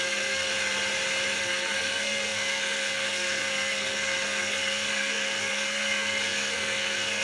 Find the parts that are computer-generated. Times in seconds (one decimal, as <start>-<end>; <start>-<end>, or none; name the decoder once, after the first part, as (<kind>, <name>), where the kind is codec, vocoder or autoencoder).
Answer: 0.0-0.5 (codec, SNAC); 1.4-7.2